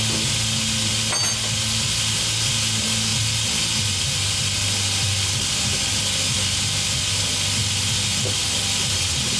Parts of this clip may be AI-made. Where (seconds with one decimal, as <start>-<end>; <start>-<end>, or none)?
none